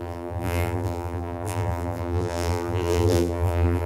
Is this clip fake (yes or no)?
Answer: yes